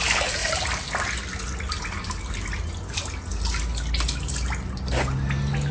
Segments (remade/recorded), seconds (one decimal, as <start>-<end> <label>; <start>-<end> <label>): 0.0-5.7 recorded